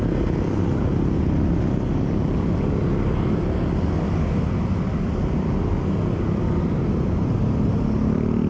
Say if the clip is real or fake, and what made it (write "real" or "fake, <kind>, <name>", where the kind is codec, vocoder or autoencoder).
real